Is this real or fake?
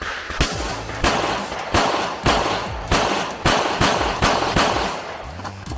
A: real